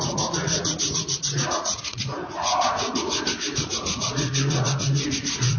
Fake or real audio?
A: fake